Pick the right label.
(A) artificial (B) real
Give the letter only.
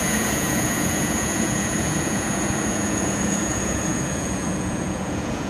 A